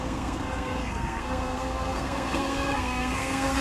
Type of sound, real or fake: fake